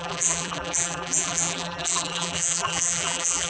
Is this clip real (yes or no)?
no